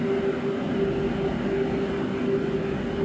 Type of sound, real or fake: real